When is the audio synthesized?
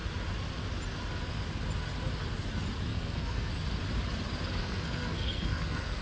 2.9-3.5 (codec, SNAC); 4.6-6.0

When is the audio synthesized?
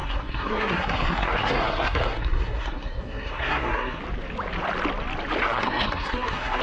0.0-4.0 (codec, SNAC); 5.4-6.6